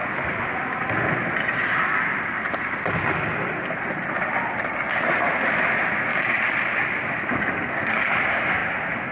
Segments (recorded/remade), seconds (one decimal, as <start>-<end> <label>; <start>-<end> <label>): 0.0-9.1 recorded